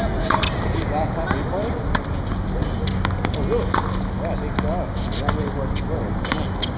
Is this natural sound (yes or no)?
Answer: yes